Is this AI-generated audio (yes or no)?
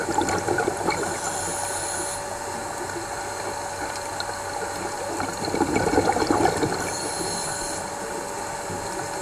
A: no